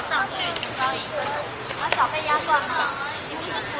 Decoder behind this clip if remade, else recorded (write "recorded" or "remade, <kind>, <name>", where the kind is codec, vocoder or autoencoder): recorded